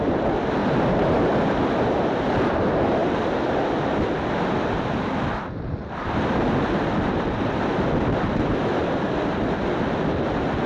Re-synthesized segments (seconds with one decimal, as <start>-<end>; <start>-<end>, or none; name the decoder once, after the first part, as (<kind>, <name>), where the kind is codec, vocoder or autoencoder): 0.6-1.2 (vocoder, BigVGAN v2)